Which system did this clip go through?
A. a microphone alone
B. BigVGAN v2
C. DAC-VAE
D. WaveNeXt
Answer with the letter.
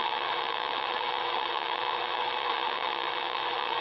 D